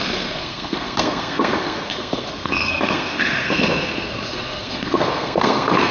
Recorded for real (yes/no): no